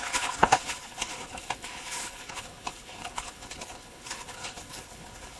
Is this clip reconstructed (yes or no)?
yes